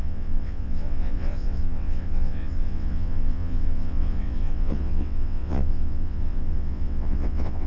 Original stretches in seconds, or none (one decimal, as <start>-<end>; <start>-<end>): none